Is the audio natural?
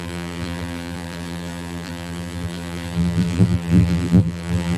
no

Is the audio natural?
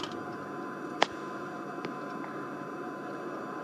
yes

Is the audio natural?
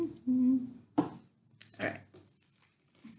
yes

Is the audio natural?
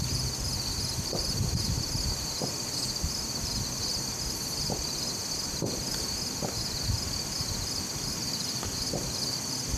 yes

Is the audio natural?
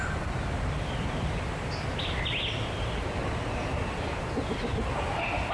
yes